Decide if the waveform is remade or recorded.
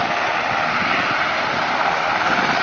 recorded